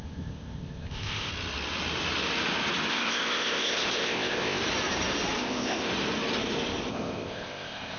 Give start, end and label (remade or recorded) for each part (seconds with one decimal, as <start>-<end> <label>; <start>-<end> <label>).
0.0-1.3 remade; 1.3-2.9 recorded; 2.9-4.6 remade; 4.6-5.4 recorded; 5.4-5.9 remade; 5.9-6.9 recorded; 6.9-8.0 remade